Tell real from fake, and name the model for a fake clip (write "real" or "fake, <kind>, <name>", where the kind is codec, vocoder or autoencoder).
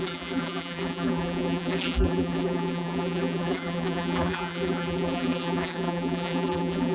fake, vocoder, BigVGAN v2